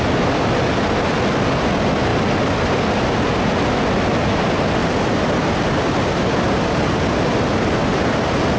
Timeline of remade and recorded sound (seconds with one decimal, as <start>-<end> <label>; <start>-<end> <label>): 0.0-8.6 recorded

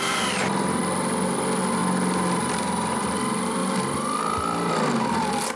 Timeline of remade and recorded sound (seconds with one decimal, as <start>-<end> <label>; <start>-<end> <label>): 0.0-5.6 recorded

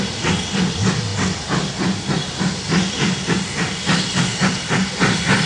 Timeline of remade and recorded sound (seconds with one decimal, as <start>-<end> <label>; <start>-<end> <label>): 0.0-5.5 recorded